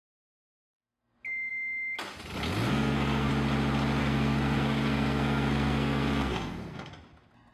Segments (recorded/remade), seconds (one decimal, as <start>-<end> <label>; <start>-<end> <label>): 0.0-2.7 recorded; 2.7-3.3 remade; 3.3-4.0 recorded; 4.0-6.9 remade; 6.9-7.5 recorded